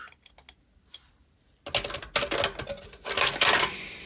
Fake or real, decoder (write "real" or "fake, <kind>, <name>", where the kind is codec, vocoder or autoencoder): real